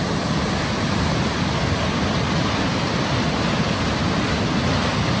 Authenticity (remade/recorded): recorded